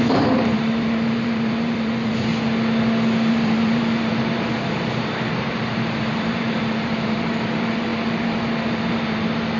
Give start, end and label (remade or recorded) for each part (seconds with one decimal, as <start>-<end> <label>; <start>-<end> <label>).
0.0-2.3 remade; 2.3-3.3 recorded; 3.3-9.6 remade